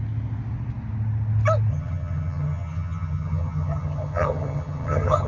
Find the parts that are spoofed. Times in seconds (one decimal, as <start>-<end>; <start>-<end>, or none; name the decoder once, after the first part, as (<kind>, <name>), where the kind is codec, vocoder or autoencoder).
1.7-5.3 (vocoder, HiFi-GAN)